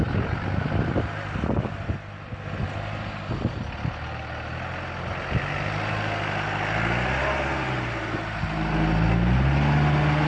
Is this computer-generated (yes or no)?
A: no